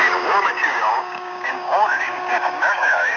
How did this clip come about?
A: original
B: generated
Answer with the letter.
B